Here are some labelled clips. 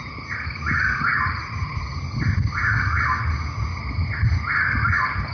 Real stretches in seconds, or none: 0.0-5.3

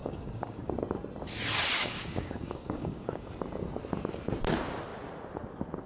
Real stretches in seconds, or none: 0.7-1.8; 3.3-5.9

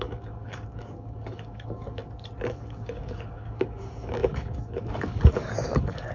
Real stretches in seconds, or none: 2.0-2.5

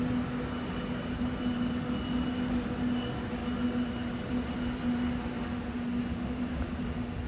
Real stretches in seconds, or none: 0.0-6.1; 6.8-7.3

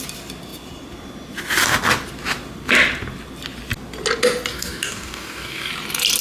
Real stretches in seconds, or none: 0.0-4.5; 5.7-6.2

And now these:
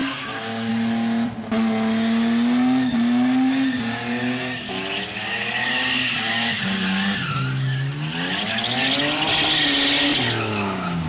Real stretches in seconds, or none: 0.7-11.1

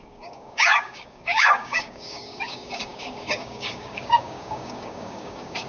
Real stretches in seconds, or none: none